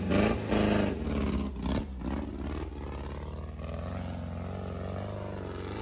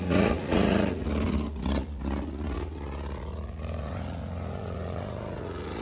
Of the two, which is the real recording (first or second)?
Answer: first